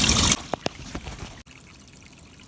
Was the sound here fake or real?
real